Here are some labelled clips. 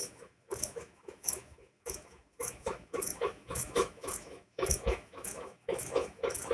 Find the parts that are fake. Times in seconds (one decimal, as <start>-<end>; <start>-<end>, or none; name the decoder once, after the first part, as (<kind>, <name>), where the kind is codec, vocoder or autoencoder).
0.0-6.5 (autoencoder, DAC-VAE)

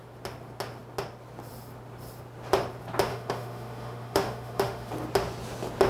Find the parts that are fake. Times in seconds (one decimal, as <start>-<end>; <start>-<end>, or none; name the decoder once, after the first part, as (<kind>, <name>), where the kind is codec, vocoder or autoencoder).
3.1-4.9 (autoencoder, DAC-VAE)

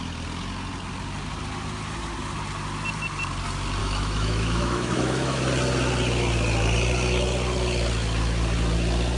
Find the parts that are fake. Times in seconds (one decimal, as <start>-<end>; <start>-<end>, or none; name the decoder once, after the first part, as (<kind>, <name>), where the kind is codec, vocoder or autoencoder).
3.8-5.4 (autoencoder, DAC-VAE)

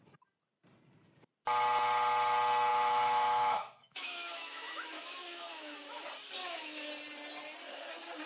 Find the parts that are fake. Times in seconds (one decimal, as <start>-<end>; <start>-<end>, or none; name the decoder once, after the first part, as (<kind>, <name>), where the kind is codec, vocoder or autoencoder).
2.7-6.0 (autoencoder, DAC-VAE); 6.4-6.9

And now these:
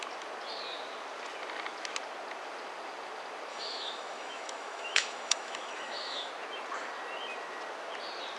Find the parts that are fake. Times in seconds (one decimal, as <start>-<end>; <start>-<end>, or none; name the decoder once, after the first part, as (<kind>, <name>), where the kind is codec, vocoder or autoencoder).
3.5-6.3 (autoencoder, DAC-VAE)

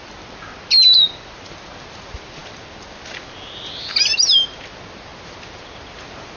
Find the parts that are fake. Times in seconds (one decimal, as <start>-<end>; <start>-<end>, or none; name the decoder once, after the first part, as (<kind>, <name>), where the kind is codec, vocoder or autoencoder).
none

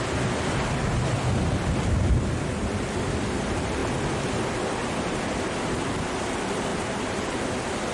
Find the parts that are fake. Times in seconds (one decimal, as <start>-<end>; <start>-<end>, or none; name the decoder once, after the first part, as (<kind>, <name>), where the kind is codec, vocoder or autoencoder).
none